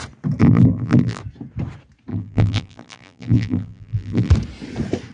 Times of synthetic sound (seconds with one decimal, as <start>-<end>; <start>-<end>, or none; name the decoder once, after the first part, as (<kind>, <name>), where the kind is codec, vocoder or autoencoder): 0.4-1.2 (vocoder, BigVGAN v2); 2.1-4.3